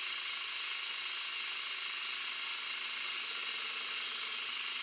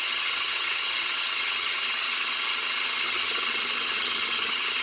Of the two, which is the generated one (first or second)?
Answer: second